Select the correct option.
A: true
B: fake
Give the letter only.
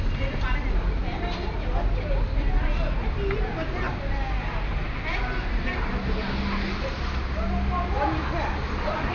A